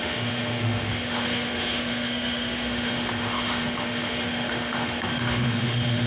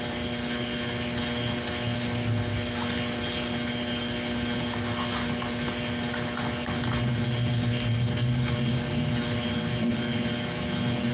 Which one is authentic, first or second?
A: second